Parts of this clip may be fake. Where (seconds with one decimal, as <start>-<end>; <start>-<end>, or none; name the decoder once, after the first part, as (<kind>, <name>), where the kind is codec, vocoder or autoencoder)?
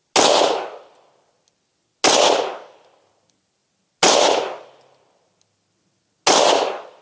none